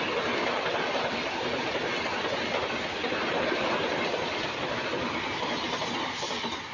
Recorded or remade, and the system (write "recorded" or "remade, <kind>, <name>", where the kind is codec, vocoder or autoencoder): recorded